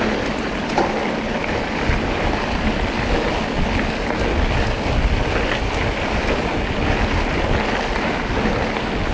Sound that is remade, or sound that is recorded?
recorded